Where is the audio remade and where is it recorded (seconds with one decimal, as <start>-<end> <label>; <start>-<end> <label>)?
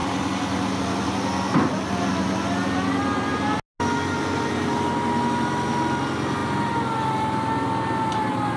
0.0-8.6 recorded